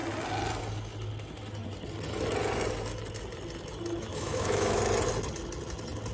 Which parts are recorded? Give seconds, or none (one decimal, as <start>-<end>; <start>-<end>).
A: 0.0-4.1; 4.8-6.1